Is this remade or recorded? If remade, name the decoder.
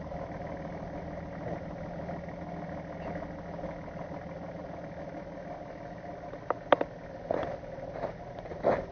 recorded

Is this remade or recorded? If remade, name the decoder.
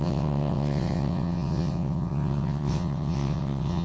remade, vocoder, WaveNeXt